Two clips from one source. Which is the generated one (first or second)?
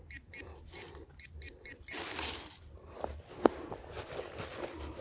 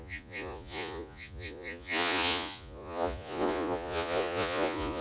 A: second